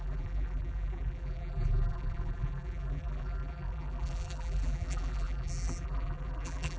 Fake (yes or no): yes